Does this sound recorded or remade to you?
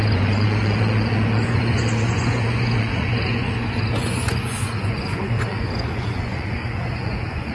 remade